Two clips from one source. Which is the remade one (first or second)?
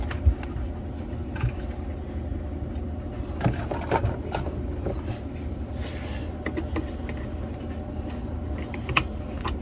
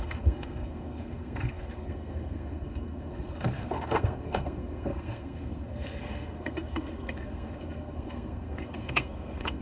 second